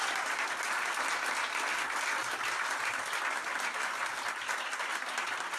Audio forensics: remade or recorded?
recorded